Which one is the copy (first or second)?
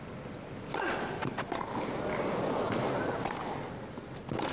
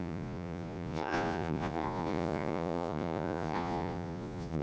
second